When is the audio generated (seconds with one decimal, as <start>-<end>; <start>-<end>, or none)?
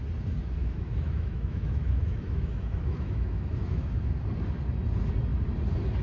0.6-4.2